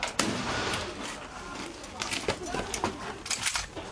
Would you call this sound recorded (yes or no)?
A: yes